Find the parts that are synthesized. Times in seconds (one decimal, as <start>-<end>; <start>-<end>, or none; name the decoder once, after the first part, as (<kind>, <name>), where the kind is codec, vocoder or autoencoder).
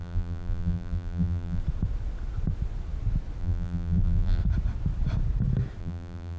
0.0-1.6 (vocoder, BigVGAN v2); 3.4-4.4; 5.8-6.4